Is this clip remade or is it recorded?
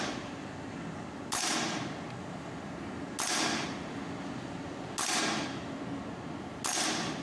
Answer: recorded